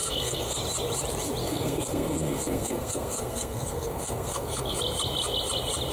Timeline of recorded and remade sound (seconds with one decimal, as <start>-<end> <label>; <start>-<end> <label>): 0.0-0.6 remade; 0.6-1.4 recorded; 1.4-4.8 remade; 4.8-5.9 recorded